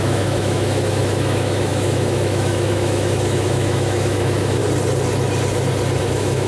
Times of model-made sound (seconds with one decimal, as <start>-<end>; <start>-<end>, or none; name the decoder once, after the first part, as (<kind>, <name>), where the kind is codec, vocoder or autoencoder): 0.0-4.6 (autoencoder, DAC-VAE); 6.0-6.5